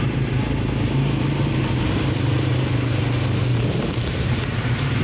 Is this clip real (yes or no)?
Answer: no